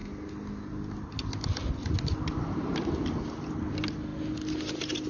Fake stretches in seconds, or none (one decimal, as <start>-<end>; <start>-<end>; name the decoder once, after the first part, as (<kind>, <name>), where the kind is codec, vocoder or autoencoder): none